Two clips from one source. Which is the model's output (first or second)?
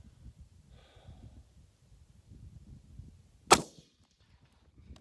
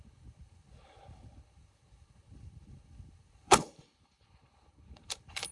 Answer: second